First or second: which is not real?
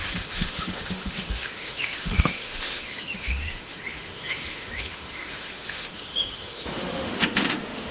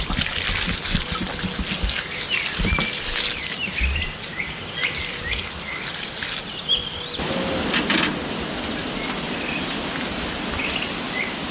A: first